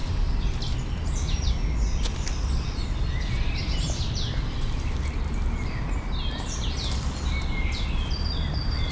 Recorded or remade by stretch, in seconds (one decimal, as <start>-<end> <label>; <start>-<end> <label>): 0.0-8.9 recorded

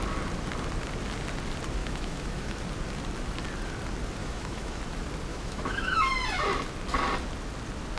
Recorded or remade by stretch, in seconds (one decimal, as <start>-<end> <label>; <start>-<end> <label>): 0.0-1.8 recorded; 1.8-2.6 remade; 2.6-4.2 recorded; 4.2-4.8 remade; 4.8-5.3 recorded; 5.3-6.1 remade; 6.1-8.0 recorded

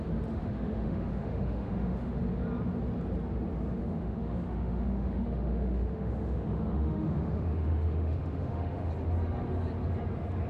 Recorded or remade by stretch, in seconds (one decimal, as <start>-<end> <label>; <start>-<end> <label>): 0.0-0.4 recorded; 0.4-2.2 remade; 2.2-3.8 recorded; 3.8-8.9 remade; 8.9-10.5 recorded

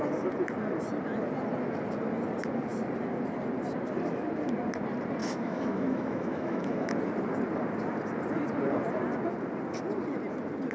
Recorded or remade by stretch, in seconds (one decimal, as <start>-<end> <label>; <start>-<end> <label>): 0.0-5.2 recorded; 5.2-6.9 remade; 6.9-10.7 recorded